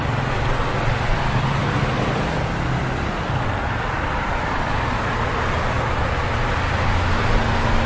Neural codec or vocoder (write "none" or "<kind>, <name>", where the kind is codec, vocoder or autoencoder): none